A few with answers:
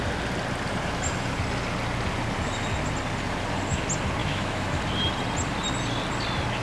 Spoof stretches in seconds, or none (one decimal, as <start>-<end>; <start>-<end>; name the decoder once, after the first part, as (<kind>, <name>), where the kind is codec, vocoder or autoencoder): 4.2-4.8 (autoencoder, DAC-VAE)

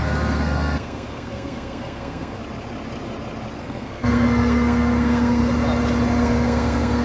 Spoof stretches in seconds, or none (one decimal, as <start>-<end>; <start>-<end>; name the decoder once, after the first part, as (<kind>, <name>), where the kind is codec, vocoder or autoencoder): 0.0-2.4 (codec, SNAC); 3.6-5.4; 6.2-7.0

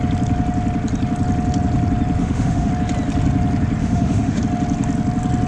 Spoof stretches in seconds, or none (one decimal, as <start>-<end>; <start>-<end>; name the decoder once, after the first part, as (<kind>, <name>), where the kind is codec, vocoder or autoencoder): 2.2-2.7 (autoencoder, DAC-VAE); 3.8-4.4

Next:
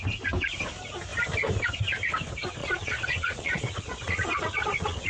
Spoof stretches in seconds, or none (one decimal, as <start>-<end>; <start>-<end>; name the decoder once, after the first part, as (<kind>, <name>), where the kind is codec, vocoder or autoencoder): 2.6-5.1 (vocoder, Vocos)